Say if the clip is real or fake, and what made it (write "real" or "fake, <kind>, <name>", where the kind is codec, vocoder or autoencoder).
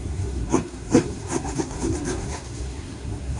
fake, codec, SNAC